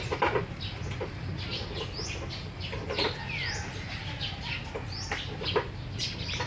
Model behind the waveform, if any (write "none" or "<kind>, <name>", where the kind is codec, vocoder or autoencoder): none